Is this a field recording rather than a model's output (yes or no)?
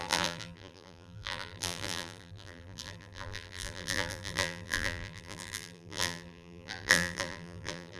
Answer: no